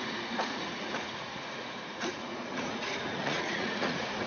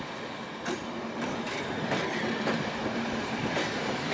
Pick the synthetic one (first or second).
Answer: first